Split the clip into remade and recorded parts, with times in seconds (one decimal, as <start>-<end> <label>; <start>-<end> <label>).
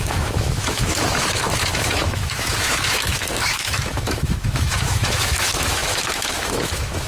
0.0-7.1 remade